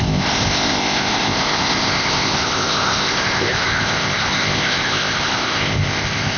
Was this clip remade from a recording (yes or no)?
yes